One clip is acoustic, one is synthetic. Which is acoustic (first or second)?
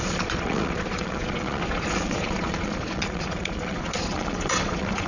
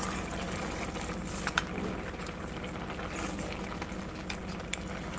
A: second